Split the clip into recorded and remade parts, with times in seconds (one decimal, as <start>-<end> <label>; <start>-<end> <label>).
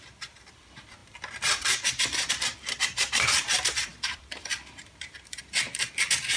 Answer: 0.0-6.4 remade